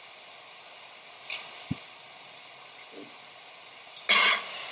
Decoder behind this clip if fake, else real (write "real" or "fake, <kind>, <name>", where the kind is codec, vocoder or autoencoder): real